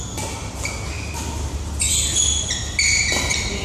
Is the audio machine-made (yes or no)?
no